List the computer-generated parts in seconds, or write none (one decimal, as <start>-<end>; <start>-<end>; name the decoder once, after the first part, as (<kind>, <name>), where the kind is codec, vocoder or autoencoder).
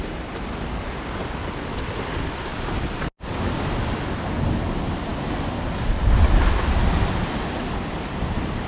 none